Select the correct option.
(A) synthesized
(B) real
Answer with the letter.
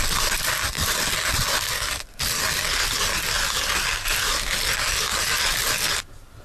B